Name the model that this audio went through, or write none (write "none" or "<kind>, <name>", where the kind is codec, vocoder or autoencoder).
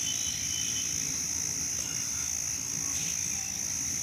none